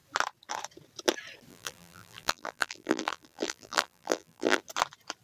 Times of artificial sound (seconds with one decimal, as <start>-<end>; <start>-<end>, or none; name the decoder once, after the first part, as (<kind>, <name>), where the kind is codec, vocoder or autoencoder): 1.5-4.6 (vocoder, BigVGAN v2)